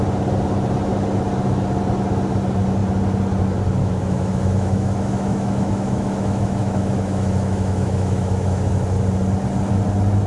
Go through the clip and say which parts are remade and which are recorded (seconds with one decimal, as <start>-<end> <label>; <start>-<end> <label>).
0.0-3.8 recorded; 3.8-8.7 remade; 8.7-10.3 recorded